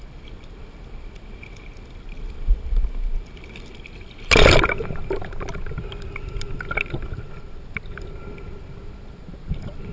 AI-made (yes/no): no